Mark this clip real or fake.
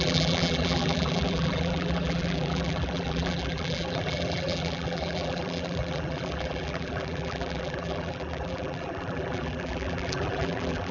fake